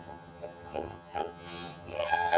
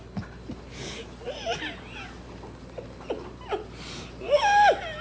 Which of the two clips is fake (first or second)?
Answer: first